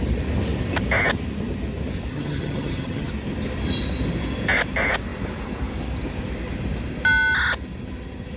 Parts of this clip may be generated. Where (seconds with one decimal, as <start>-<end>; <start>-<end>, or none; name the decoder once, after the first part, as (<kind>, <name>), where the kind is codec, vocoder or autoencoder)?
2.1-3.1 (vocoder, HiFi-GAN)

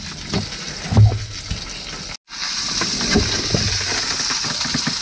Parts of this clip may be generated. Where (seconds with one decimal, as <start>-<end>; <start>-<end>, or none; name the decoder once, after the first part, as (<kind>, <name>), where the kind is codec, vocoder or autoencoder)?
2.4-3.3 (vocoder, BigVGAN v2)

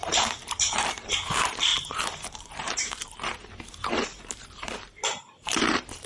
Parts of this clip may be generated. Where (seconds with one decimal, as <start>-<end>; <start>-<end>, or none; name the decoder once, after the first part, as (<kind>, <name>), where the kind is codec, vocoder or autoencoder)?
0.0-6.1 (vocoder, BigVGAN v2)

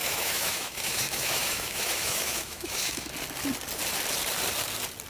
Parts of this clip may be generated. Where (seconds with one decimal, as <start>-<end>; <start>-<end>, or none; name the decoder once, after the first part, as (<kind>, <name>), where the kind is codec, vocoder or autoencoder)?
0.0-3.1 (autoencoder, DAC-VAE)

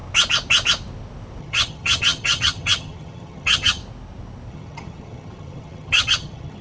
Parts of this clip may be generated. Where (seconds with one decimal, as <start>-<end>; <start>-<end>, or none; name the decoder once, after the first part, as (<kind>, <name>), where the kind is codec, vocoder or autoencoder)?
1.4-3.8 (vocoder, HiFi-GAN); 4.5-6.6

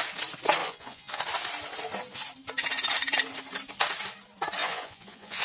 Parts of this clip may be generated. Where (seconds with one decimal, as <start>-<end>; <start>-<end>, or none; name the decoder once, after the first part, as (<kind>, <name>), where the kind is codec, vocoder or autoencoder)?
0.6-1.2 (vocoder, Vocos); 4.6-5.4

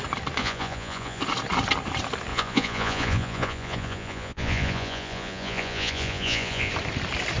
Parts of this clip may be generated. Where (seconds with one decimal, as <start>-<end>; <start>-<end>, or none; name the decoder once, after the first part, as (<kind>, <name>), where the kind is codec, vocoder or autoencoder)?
0.4-1.2 (vocoder, Vocos); 2.3-6.7

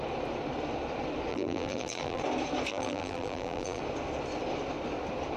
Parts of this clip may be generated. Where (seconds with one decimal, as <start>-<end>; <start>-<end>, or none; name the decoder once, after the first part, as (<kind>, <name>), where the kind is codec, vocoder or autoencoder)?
1.3-2.2 (vocoder, BigVGAN v2); 2.7-3.8